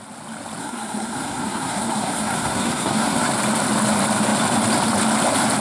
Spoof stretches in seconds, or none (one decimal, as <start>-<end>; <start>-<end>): 0.6-3.3